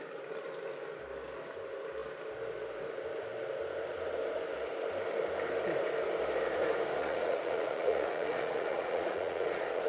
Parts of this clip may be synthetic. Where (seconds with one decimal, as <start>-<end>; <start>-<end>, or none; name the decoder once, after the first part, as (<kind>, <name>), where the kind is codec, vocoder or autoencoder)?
7.0-9.9 (vocoder, Vocos)